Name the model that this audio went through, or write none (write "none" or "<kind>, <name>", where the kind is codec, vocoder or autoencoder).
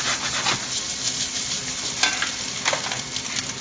none